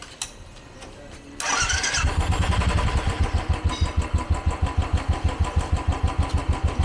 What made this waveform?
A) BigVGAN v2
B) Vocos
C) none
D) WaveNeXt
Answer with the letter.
C